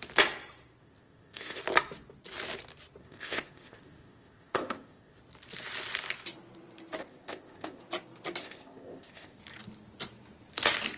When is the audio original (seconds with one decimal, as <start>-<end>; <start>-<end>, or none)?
0.0-0.8; 1.6-3.0; 5.2-7.0; 7.8-8.4; 9.4-11.0